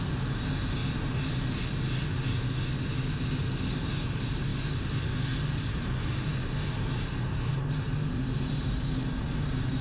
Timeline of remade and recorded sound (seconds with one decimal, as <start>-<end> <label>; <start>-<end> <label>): 0.0-0.8 remade; 0.8-3.8 recorded; 3.8-4.5 remade; 4.5-5.5 recorded; 5.5-6.3 remade; 6.3-7.5 recorded; 7.5-9.8 remade